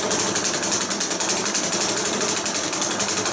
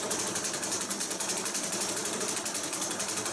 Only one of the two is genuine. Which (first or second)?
first